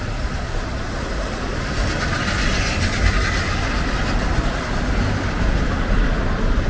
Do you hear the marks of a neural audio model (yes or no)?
no